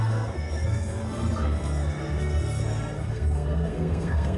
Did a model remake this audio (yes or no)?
yes